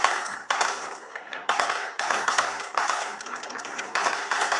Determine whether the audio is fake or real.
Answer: fake